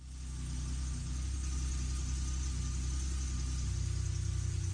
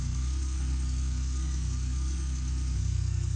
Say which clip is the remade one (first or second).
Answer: second